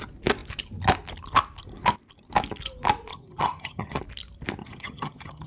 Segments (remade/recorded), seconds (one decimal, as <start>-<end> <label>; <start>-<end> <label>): 0.0-3.1 recorded; 3.1-4.0 remade; 4.0-4.6 recorded; 4.6-5.5 remade